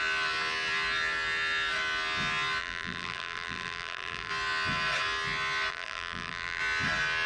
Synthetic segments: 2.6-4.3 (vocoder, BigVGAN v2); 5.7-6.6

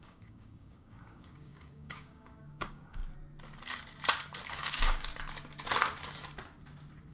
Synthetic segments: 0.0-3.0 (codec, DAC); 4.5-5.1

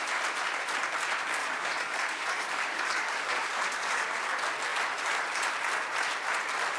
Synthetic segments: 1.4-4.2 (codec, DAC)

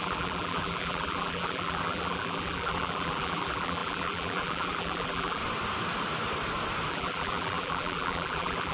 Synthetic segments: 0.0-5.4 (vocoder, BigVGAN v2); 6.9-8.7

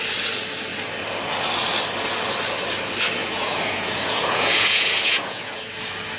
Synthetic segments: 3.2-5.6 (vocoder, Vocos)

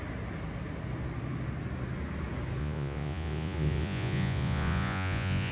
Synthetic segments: 2.6-5.5 (vocoder, Vocos)

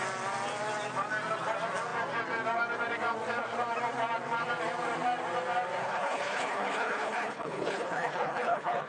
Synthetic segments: 5.8-8.9 (codec, HILCodec)